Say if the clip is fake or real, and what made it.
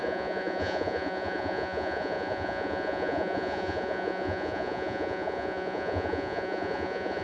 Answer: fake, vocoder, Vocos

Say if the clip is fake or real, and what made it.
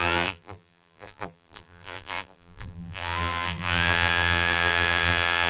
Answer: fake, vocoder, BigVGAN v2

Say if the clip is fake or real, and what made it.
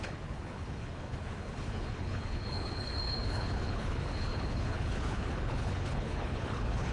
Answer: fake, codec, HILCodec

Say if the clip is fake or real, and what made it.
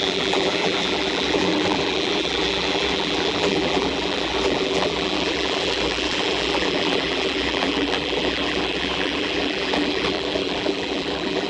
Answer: fake, vocoder, BigVGAN v2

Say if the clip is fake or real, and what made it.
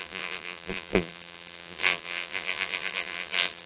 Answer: fake, vocoder, BigVGAN v2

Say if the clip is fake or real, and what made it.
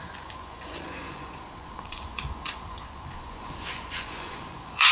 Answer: fake, vocoder, Vocos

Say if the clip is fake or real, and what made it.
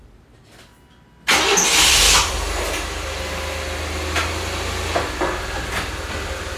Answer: real